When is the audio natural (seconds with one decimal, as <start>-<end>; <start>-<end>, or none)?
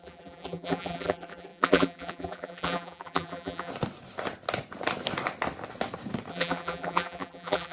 3.7-6.3